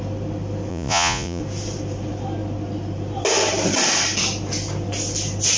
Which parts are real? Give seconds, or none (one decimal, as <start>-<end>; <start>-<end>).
0.0-0.7; 1.4-5.6